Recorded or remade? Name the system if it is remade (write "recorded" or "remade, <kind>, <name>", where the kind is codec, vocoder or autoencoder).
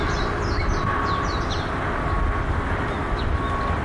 recorded